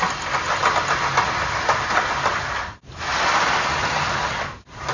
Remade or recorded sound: recorded